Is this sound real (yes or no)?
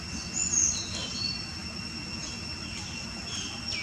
yes